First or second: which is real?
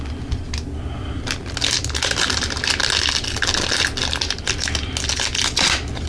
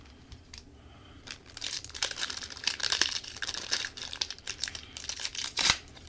first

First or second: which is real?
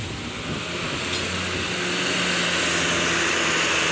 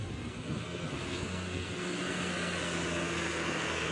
first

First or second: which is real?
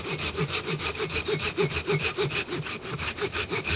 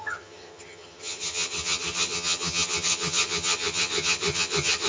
first